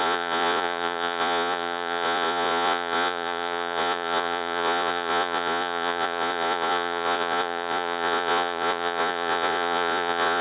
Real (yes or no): no